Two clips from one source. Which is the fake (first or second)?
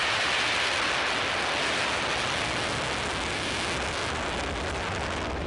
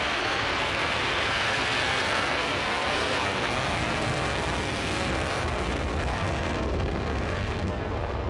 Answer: second